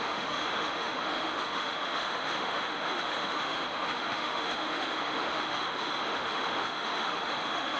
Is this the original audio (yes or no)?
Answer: no